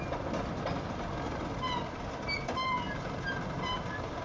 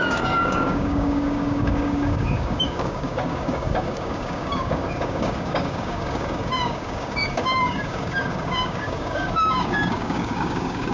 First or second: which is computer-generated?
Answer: second